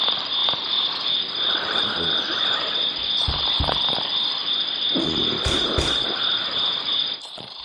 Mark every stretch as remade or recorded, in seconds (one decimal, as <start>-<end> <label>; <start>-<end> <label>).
0.0-7.6 recorded